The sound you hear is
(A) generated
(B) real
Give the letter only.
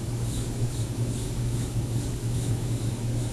A